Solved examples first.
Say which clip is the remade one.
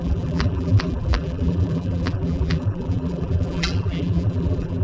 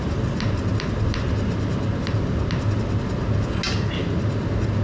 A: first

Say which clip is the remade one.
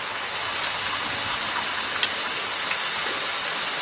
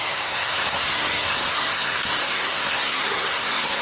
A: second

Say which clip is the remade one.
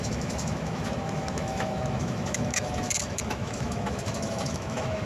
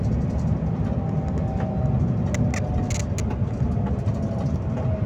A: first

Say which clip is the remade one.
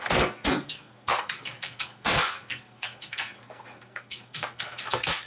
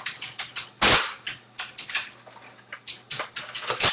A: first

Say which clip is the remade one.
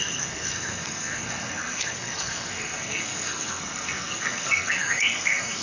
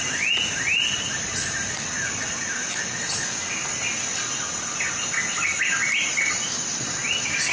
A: first